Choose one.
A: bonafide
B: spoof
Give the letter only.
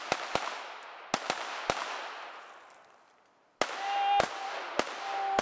A